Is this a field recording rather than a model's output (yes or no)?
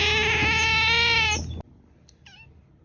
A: yes